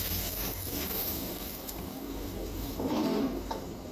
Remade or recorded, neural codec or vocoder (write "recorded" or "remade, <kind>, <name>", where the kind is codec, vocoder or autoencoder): remade, codec, DAC